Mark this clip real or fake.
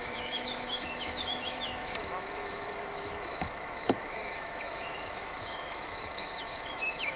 fake